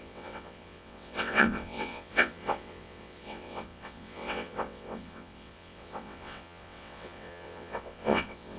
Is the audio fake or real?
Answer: fake